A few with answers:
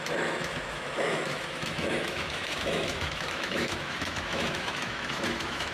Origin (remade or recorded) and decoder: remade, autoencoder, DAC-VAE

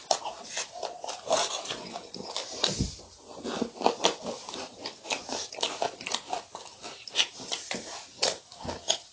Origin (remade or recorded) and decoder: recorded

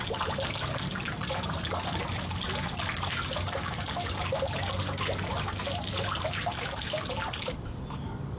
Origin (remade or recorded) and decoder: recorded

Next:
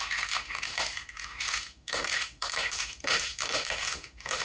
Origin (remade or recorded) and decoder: remade, autoencoder, DAC-VAE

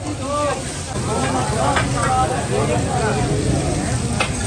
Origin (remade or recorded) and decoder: recorded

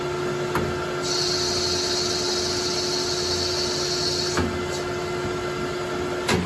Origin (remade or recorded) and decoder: recorded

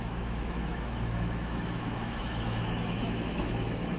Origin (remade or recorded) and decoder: remade, autoencoder, DAC-VAE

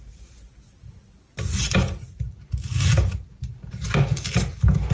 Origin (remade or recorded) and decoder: recorded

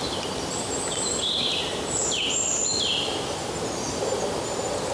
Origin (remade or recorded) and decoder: recorded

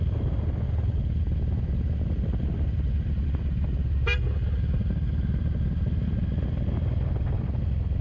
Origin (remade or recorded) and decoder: recorded